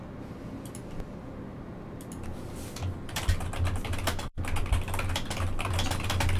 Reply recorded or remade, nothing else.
recorded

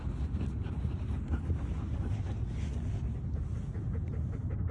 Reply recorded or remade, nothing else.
recorded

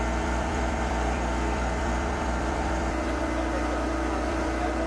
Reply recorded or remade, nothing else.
remade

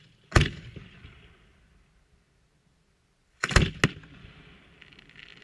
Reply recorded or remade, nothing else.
recorded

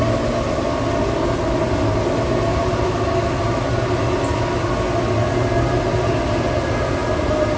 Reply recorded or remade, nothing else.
recorded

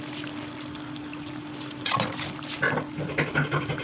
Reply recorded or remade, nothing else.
recorded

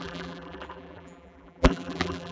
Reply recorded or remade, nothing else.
remade